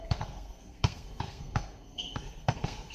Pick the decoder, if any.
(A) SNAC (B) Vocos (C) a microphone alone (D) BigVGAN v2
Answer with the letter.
A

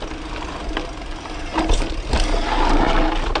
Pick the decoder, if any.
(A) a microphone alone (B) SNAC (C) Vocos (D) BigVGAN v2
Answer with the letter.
A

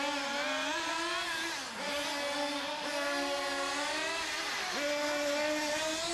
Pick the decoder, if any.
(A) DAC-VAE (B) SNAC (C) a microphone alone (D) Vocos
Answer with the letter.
C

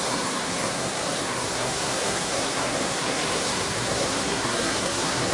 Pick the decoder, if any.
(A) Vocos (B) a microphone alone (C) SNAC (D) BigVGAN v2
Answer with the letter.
C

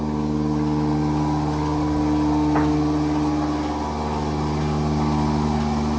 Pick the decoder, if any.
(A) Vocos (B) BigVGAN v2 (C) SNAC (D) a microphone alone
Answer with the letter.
D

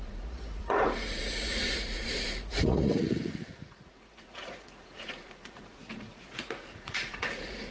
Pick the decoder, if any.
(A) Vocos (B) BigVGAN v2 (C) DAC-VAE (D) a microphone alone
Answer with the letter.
A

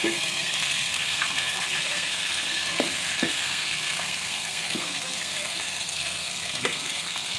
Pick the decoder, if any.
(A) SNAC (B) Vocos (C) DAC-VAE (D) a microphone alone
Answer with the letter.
A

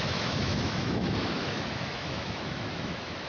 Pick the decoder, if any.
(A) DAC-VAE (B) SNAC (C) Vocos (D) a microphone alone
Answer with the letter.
A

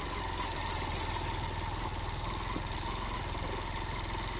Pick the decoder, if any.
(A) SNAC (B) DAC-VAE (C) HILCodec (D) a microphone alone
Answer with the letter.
D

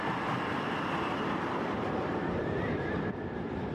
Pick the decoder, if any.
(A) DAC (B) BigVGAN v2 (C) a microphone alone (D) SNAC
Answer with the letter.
C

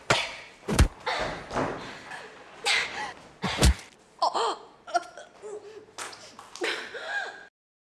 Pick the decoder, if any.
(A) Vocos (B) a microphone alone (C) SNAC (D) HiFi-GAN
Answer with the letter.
B